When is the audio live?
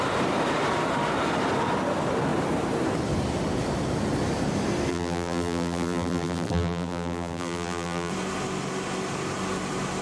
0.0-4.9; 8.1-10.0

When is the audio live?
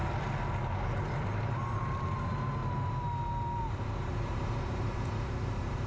0.0-0.9; 2.6-3.6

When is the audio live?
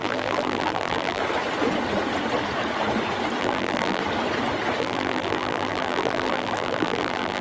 1.2-3.4; 4.0-4.8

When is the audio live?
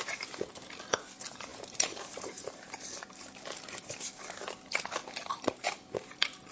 0.0-1.5; 2.7-5.0; 5.6-6.5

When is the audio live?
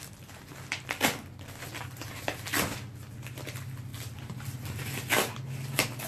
3.9-4.4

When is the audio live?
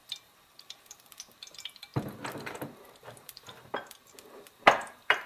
none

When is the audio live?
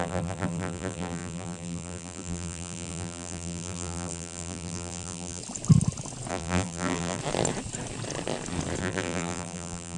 5.4-6.3; 7.2-8.8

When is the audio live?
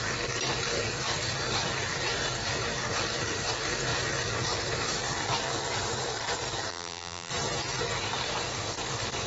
0.0-6.7; 7.3-9.3